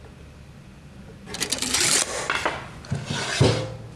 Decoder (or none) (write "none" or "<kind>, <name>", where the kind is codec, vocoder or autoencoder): none